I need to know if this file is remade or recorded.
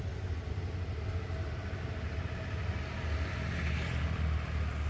recorded